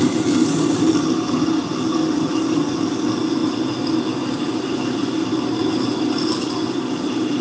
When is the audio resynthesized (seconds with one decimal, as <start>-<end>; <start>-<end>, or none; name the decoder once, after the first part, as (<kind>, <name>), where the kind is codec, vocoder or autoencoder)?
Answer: none